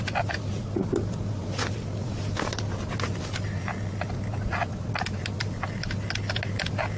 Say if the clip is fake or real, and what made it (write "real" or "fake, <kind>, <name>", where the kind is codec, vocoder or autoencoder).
real